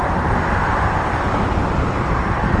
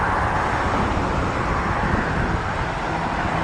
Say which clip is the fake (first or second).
first